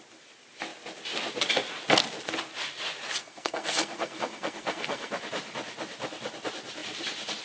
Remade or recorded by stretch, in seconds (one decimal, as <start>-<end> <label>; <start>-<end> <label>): 0.0-3.2 recorded; 3.2-5.2 remade; 5.2-7.4 recorded